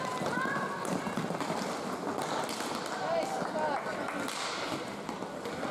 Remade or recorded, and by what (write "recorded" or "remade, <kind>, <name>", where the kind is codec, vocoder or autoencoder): recorded